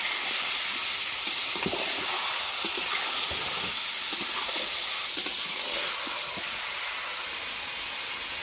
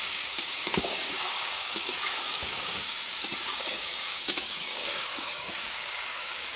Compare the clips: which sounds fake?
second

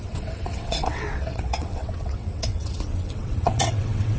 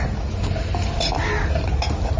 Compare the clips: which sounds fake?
first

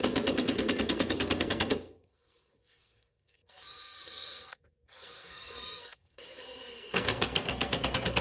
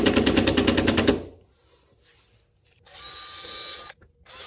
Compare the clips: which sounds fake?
first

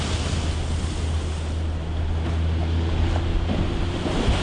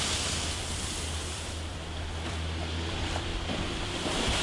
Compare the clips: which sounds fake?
second